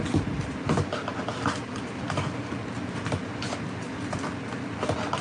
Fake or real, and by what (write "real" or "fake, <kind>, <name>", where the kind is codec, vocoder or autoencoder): real